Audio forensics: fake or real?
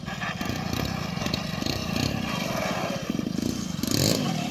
real